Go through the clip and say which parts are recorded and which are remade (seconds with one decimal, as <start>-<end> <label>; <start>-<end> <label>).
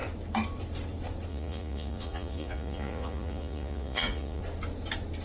0.0-1.3 recorded; 1.3-4.4 remade; 4.4-5.2 recorded